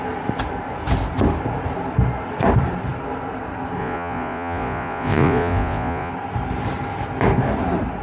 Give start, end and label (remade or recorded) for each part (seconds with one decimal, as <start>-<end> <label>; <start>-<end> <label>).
0.0-3.8 recorded; 3.8-6.1 remade; 6.1-8.0 recorded